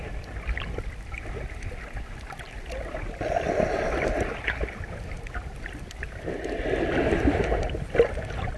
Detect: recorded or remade recorded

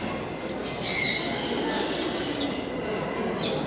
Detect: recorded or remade recorded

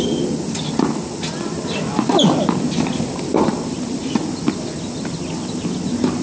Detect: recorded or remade recorded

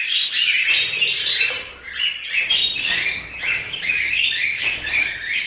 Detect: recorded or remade remade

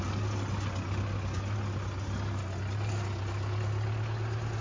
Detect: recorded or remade recorded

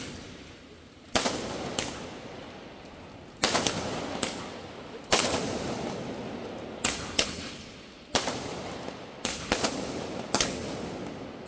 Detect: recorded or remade recorded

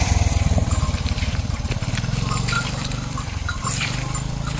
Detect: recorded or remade remade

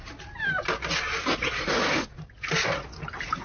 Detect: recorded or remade recorded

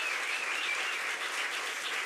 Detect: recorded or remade recorded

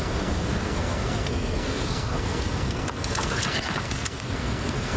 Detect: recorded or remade remade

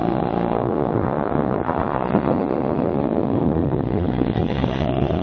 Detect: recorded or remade remade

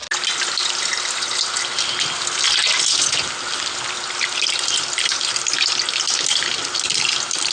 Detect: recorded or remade recorded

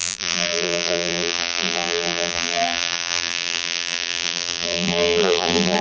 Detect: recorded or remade remade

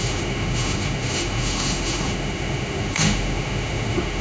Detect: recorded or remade remade